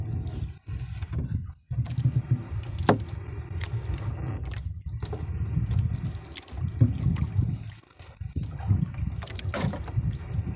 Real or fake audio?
real